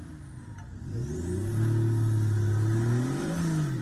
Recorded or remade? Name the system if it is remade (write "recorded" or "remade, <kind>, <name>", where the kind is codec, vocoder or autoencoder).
recorded